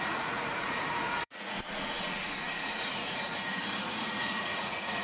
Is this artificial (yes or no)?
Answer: yes